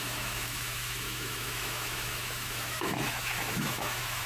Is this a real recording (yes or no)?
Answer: no